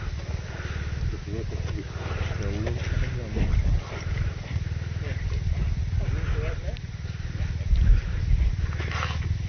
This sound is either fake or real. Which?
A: real